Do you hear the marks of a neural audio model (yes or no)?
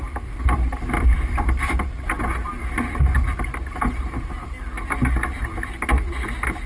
no